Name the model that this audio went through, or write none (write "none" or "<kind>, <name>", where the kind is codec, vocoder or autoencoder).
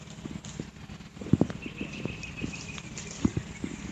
none